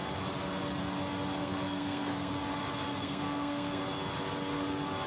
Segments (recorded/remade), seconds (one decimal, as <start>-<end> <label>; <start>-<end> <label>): 0.0-1.4 recorded; 1.4-2.3 remade; 2.3-2.9 recorded; 2.9-3.8 remade; 3.8-5.1 recorded